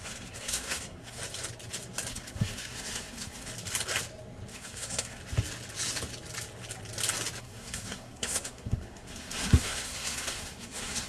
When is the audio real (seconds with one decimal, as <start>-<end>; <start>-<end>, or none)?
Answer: 1.2-2.1; 3.5-4.5; 5.2-7.4